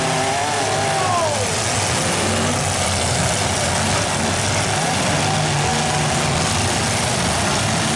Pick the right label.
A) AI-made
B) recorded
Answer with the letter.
B